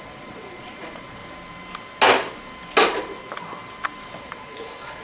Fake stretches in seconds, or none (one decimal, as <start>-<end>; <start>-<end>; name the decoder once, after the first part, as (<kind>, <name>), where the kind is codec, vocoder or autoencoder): 0.0-1.2 (vocoder, Vocos); 4.2-5.0